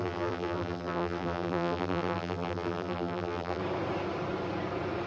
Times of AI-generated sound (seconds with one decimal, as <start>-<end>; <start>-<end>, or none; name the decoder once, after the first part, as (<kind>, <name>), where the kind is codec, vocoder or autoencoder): 0.0-3.6 (vocoder, BigVGAN v2)